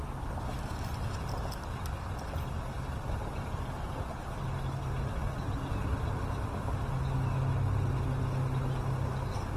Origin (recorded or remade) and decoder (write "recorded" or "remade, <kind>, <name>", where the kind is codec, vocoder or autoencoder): recorded